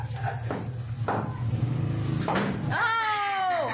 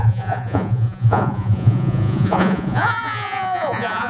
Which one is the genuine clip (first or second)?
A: first